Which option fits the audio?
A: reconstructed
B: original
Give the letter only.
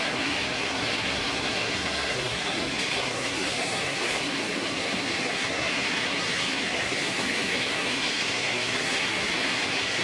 A